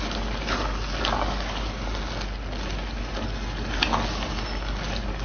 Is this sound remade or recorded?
recorded